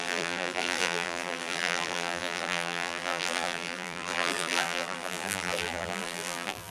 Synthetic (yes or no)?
yes